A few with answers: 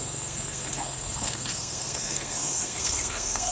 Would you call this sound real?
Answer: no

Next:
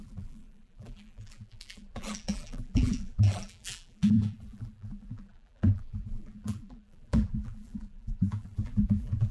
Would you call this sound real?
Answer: no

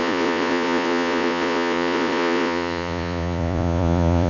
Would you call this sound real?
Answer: no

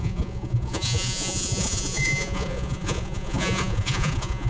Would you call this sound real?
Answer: no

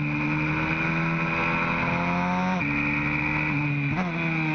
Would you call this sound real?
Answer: yes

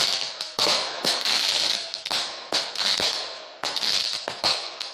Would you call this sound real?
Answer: no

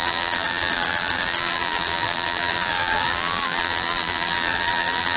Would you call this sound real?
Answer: no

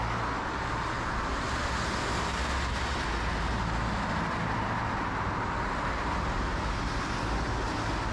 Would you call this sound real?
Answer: yes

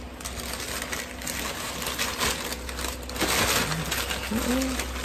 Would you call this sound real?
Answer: yes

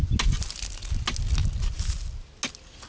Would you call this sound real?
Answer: yes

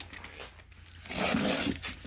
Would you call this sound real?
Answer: yes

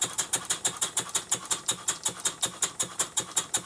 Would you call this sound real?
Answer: yes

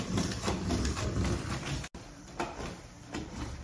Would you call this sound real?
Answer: yes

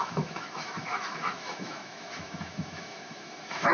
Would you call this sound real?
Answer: no